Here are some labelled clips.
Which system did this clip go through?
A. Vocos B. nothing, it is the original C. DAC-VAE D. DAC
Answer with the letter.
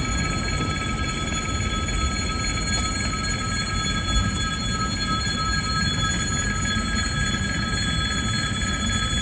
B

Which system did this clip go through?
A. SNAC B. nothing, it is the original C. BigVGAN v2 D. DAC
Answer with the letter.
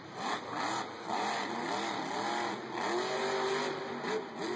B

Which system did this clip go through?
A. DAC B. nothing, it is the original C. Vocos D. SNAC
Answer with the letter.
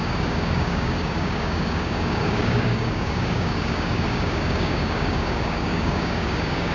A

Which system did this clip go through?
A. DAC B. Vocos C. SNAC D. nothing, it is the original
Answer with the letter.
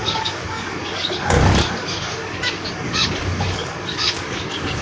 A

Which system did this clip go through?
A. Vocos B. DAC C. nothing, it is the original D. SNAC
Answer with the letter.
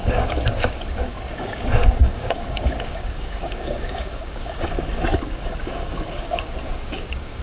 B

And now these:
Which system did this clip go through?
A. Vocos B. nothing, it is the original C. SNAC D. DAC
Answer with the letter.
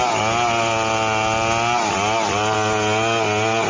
B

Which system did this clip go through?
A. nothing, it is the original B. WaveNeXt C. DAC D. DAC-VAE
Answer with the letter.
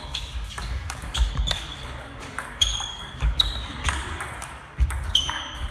C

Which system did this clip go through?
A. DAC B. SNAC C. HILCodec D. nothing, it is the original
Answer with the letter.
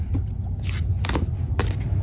D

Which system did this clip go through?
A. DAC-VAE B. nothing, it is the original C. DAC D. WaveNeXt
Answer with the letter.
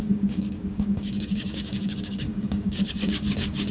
C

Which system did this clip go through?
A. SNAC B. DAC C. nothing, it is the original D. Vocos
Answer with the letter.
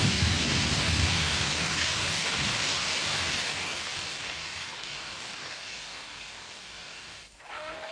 B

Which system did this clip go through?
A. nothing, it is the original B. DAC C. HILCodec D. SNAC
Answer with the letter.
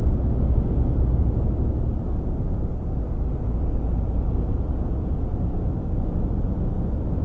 A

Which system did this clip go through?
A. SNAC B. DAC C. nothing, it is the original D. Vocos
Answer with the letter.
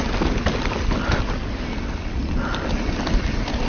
C